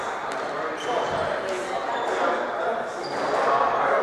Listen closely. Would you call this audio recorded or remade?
recorded